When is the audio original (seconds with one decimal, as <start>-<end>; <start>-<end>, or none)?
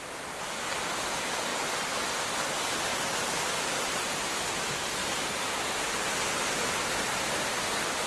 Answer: 0.0-2.9; 4.5-5.0; 5.5-6.1; 6.8-8.1